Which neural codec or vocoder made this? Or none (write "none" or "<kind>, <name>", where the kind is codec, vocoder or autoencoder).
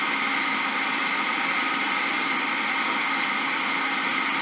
none